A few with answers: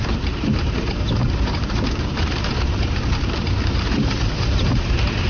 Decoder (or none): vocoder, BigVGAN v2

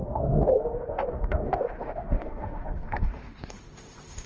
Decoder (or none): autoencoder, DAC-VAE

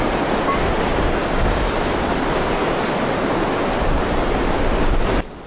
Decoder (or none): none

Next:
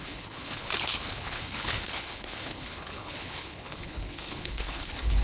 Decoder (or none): codec, HILCodec